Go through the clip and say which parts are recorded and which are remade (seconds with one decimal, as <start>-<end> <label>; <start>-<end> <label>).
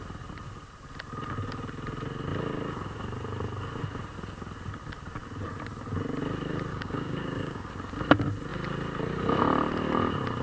0.0-6.7 recorded; 6.7-7.7 remade; 7.7-10.4 recorded